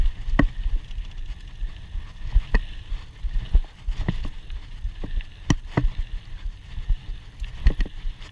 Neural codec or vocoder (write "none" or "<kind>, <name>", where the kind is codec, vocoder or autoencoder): none